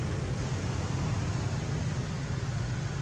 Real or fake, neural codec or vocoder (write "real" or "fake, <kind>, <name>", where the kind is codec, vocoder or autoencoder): real